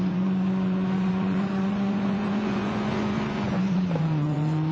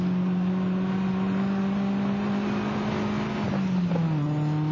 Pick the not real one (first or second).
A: first